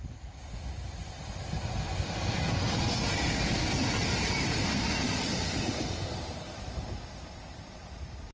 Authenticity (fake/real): real